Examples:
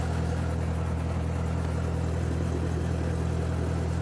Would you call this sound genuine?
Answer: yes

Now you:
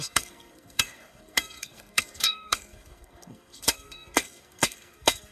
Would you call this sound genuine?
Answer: no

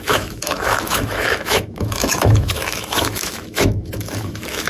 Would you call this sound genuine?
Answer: no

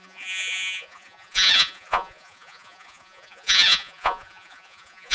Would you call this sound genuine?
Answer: no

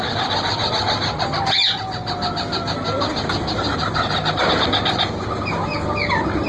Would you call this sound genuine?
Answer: yes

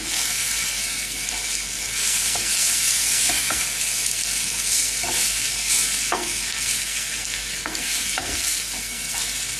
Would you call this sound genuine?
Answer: no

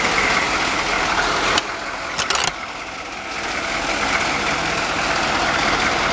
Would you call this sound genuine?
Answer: yes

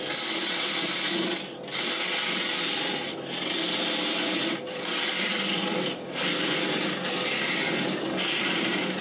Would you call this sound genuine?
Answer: no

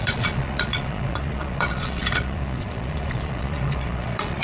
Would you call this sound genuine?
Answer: no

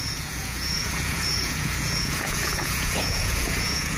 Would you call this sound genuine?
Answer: no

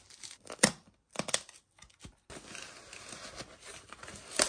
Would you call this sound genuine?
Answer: yes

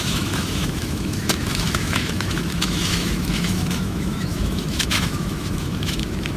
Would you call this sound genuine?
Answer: no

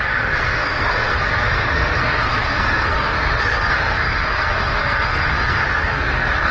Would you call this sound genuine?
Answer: no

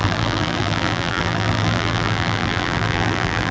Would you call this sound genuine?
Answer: no